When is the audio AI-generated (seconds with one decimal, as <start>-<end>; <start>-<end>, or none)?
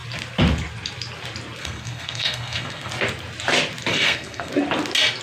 1.6-2.9; 3.9-4.5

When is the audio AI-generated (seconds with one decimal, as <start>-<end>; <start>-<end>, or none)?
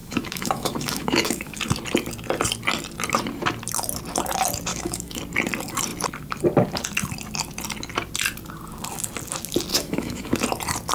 0.0-1.6; 4.7-5.2; 9.7-10.4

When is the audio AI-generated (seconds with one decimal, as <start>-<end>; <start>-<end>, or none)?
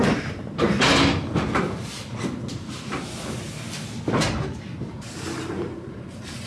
0.0-0.9; 4.8-6.5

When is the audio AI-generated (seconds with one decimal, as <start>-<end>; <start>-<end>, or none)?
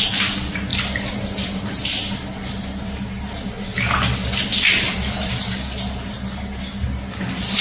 none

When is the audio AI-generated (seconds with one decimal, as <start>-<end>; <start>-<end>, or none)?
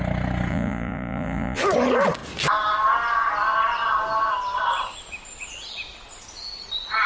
0.5-1.6